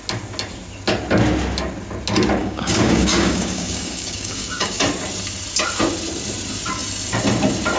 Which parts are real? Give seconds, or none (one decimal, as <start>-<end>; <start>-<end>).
0.0-2.4; 4.8-7.8